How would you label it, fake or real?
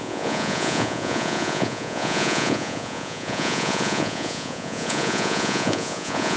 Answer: fake